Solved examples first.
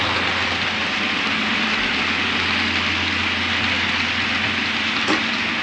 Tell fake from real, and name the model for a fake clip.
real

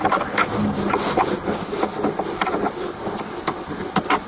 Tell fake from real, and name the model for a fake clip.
real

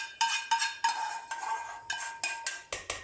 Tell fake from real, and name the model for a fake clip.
real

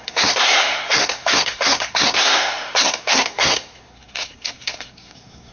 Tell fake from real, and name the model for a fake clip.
fake, codec, SNAC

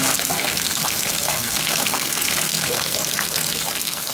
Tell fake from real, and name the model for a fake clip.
fake, codec, SNAC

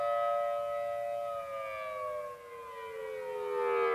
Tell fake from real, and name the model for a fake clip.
real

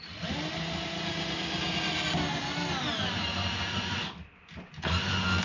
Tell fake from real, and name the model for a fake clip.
real